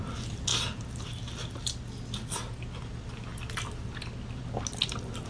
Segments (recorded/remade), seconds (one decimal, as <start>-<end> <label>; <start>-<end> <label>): 0.0-5.3 recorded